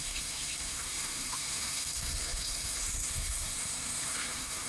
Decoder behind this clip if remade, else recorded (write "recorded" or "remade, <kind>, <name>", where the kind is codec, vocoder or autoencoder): remade, codec, SNAC